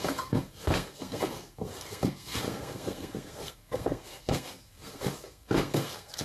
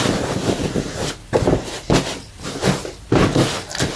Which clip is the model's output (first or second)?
first